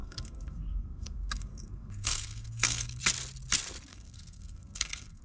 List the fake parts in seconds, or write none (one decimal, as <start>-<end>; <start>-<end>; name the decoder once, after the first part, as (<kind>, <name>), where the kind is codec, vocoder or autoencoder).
0.0-3.0 (codec, SNAC); 3.9-5.2